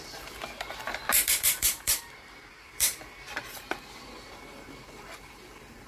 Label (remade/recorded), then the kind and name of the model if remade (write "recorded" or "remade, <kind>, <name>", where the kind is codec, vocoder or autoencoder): remade, vocoder, BigVGAN v2